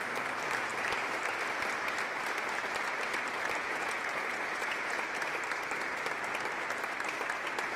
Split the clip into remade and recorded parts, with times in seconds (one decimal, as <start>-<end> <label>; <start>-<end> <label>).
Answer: 0.0-3.6 recorded; 3.6-5.0 remade; 5.0-7.8 recorded